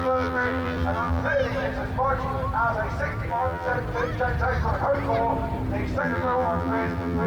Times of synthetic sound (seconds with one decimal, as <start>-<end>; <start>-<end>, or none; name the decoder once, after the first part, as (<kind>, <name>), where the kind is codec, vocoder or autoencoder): 0.0-1.2 (vocoder, BigVGAN v2); 3.3-3.7; 6.0-7.3